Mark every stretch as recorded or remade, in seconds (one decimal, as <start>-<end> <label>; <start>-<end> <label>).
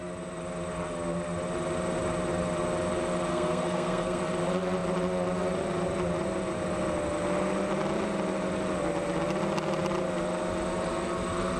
0.0-3.3 recorded; 3.3-4.2 remade; 4.2-11.6 recorded